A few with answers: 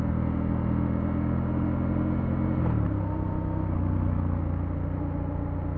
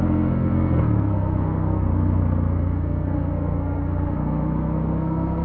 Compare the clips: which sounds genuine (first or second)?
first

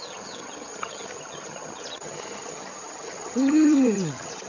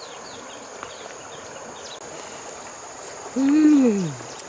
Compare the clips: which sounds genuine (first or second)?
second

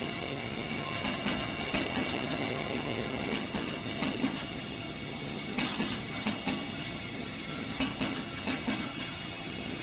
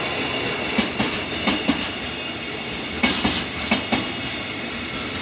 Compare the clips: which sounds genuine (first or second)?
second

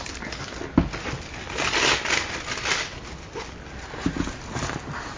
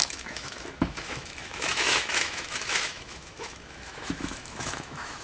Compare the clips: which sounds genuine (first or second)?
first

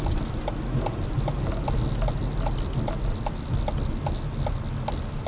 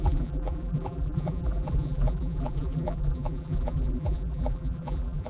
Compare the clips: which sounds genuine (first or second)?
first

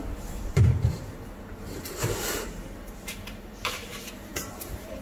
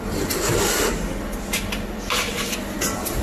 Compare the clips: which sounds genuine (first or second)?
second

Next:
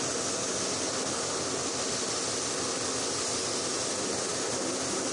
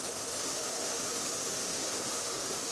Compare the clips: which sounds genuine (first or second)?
first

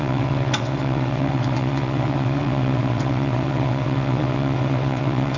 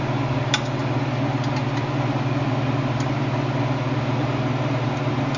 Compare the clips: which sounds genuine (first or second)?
second